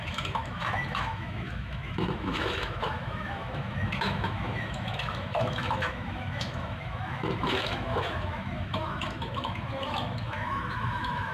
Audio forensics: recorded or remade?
remade